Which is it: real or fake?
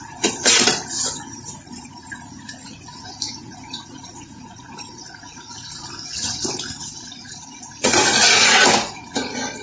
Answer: fake